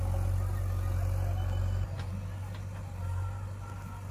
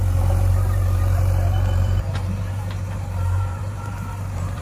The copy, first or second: second